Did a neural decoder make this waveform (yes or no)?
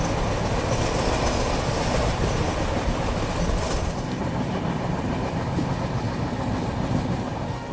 no